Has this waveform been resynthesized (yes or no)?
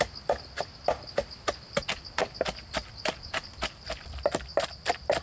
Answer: no